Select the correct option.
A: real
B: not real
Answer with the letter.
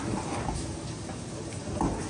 A